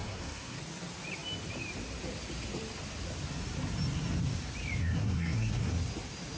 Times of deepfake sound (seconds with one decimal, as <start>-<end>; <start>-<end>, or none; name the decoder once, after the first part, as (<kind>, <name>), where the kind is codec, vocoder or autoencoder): 0.0-0.6 (codec, SNAC); 4.8-5.7